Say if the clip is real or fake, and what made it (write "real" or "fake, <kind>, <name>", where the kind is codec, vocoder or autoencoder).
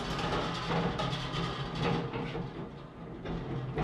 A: real